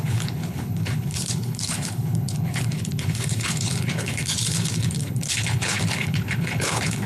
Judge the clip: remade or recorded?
remade